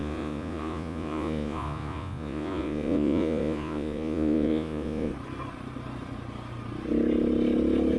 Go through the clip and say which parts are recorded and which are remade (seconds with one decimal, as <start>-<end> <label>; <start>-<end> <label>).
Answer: 0.0-5.1 remade; 5.1-8.0 recorded